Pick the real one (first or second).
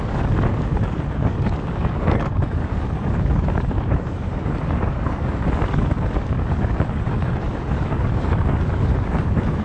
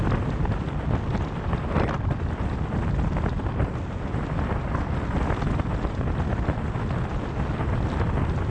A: second